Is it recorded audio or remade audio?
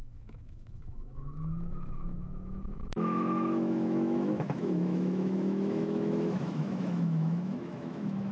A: remade